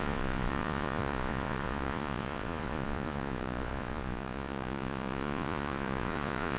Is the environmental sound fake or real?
fake